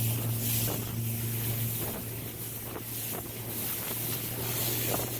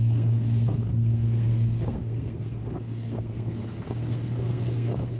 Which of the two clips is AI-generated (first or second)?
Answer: second